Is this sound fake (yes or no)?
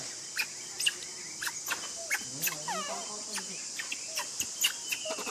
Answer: no